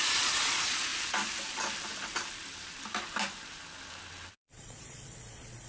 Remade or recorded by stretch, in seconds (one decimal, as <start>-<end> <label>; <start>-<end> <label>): 0.0-0.9 remade; 0.9-4.3 recorded; 4.3-5.7 remade